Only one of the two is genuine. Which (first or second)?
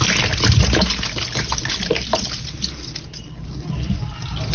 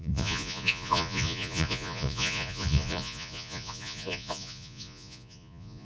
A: first